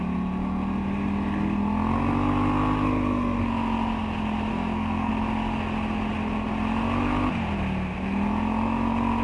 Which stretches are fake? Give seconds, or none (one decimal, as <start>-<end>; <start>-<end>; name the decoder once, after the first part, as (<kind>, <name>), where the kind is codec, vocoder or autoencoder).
4.5-5.1 (codec, SNAC)